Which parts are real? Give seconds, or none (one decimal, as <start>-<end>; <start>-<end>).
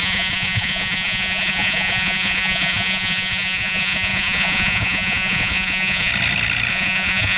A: 6.1-6.7